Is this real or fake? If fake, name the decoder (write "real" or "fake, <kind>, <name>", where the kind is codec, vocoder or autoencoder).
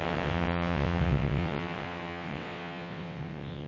fake, vocoder, WaveNeXt